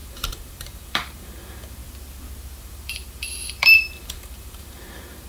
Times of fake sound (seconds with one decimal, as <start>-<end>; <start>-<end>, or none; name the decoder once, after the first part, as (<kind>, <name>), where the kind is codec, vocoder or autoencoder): 0.0-1.8 (vocoder, BigVGAN v2); 2.6-5.3